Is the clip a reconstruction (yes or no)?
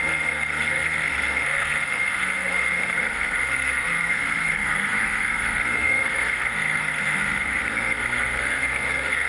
yes